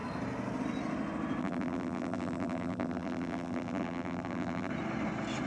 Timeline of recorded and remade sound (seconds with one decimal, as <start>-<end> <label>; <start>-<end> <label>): 0.0-1.4 recorded; 1.4-4.7 remade; 4.7-5.5 recorded